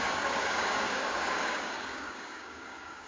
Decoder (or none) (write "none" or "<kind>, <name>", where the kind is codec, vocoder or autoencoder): codec, DAC